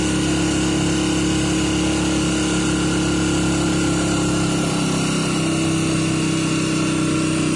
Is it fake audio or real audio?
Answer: real